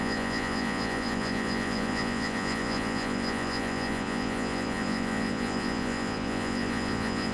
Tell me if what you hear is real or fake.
fake